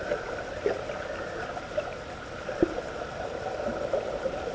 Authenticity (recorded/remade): recorded